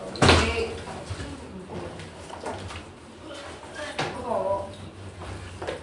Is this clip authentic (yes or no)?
yes